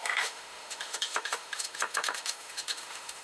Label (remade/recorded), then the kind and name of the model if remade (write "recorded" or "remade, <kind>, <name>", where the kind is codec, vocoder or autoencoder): remade, autoencoder, DAC-VAE